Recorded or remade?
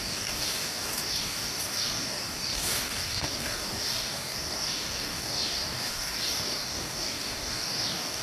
remade